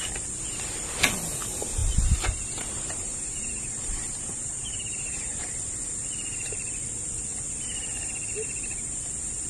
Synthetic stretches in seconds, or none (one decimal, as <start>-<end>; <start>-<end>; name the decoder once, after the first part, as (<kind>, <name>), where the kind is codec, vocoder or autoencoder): 1.8-5.5 (vocoder, BigVGAN v2)